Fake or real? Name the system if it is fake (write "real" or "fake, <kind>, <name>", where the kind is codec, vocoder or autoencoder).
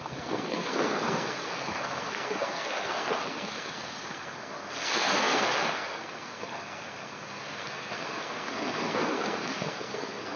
fake, codec, SNAC